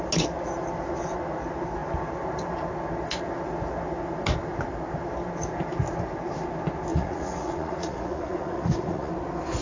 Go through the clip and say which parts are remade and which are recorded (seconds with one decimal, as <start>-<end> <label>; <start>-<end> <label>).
0.0-6.9 recorded; 6.9-9.1 remade; 9.1-9.6 recorded

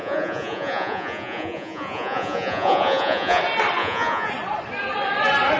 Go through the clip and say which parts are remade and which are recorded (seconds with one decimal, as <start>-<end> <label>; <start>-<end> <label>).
0.0-3.4 remade; 3.4-3.8 recorded; 3.8-4.3 remade; 4.3-5.6 recorded

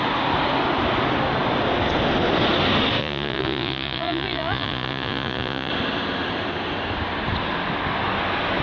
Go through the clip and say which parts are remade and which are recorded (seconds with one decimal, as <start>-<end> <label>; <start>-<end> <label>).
0.0-3.0 recorded; 3.0-5.7 remade; 5.7-8.6 recorded

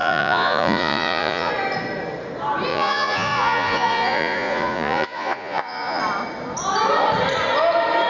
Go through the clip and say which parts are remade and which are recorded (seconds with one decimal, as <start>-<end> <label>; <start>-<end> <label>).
0.0-1.5 remade; 1.5-2.7 recorded; 2.7-6.0 remade; 6.0-8.1 recorded